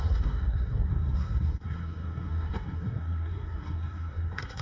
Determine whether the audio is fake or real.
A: fake